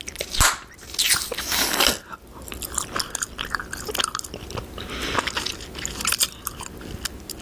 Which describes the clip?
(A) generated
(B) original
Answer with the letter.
B